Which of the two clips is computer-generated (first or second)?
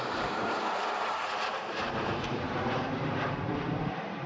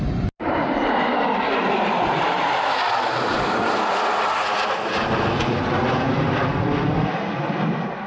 first